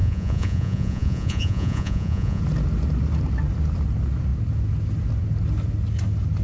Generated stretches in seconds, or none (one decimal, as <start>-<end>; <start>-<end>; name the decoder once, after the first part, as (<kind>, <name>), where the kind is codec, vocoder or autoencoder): 0.0-2.4 (vocoder, Vocos)